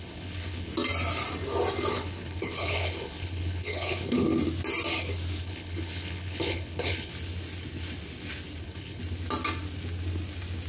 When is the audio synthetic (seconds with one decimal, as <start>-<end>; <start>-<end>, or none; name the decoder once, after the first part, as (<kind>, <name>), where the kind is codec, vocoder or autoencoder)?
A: 0.0-0.7 (codec, HILCodec); 1.9-4.3; 5.4-7.1; 8.6-9.0